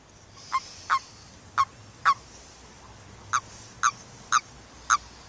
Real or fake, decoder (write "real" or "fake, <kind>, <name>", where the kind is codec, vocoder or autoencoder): real